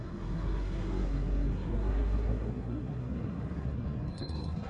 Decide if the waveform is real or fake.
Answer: fake